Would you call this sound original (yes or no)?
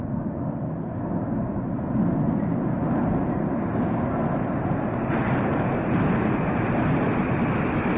yes